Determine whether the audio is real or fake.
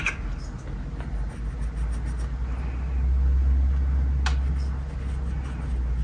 real